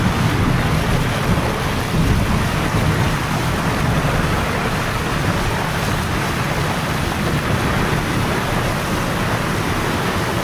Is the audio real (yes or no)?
yes